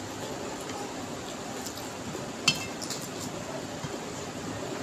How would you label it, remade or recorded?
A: recorded